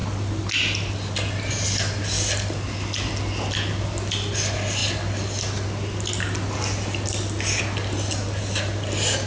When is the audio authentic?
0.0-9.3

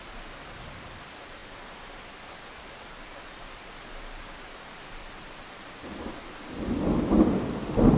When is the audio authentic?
0.0-8.0

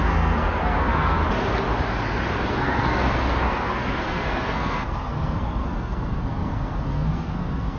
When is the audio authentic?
1.2-2.5